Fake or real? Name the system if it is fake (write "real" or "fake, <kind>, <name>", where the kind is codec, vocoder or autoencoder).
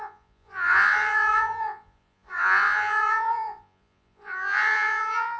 fake, vocoder, Vocos